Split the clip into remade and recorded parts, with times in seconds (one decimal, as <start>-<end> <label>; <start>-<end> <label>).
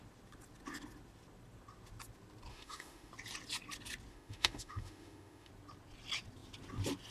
0.0-2.5 recorded; 2.5-3.1 remade; 3.1-4.1 recorded; 4.1-5.5 remade; 5.5-7.1 recorded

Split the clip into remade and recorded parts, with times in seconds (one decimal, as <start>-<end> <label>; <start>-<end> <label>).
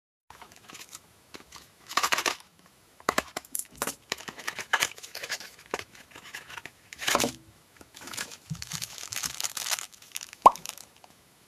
0.0-11.5 remade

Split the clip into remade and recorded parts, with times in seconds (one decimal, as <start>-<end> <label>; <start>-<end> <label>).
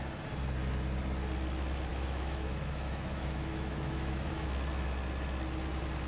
0.0-1.9 recorded; 1.9-4.3 remade; 4.3-6.1 recorded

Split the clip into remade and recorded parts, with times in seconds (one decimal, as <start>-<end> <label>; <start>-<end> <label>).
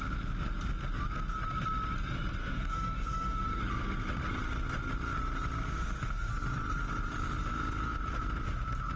0.0-2.4 recorded; 2.4-3.6 remade; 3.6-5.7 recorded; 5.7-6.3 remade; 6.3-9.0 recorded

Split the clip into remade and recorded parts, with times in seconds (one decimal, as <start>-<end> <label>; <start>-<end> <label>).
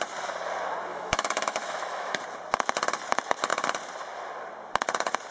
0.0-0.9 recorded; 0.9-2.2 remade; 2.2-5.3 recorded